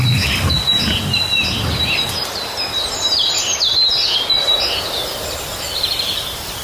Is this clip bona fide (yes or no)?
yes